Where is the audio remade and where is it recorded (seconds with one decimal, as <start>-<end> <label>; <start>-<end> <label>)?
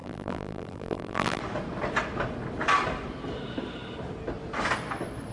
0.0-1.4 remade; 1.4-5.3 recorded